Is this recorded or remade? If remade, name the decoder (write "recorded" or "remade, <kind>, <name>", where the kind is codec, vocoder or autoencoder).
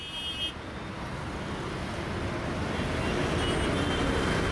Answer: recorded